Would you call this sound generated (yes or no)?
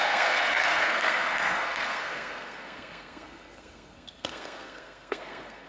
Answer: yes